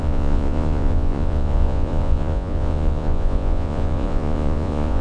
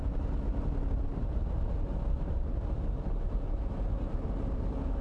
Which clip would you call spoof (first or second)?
first